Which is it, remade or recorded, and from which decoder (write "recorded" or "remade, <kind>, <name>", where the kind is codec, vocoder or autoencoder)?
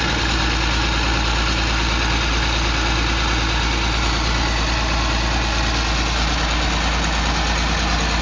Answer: recorded